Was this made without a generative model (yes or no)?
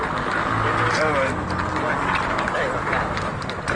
yes